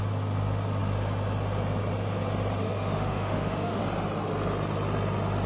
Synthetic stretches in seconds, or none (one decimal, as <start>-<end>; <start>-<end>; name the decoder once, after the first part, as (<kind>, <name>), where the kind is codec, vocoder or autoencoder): 2.6-3.8 (autoencoder, DAC-VAE)